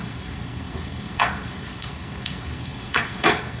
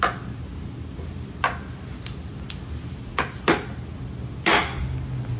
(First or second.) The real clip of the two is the second